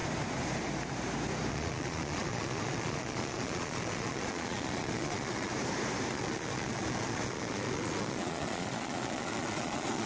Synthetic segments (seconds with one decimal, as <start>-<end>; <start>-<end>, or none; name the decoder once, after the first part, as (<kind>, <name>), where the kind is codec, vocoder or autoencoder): 1.5-5.5 (vocoder, Vocos); 6.1-10.1